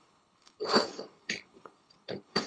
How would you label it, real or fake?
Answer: fake